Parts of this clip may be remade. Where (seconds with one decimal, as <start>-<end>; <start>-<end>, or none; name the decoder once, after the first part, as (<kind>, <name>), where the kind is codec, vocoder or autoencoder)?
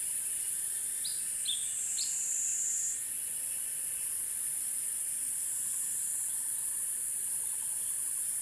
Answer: 0.0-1.1 (vocoder, BigVGAN v2); 1.8-2.5; 7.3-8.4